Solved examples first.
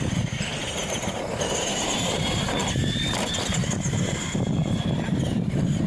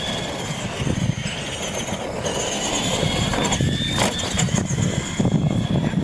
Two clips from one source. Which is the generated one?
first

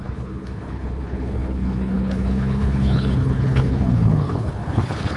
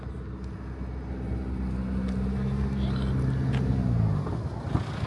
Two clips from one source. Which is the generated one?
first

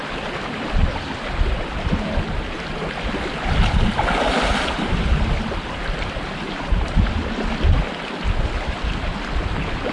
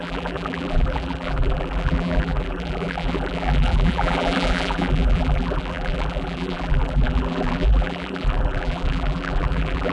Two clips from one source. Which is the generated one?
second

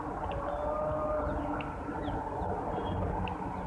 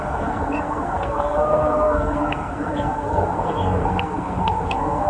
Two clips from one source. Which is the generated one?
second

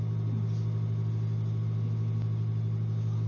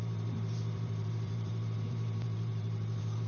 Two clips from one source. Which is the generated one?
second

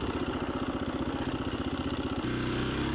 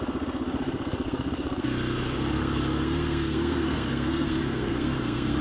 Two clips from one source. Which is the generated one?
second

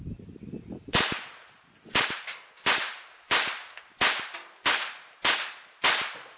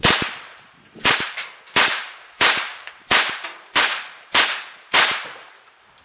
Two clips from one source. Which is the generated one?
second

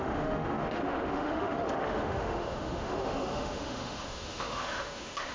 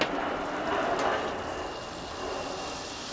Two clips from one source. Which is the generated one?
first